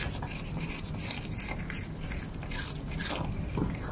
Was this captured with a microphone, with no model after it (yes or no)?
yes